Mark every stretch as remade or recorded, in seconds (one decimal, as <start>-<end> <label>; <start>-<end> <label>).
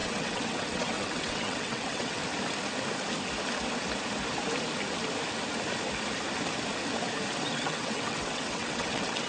0.0-2.2 remade; 2.2-7.5 recorded; 7.5-9.3 remade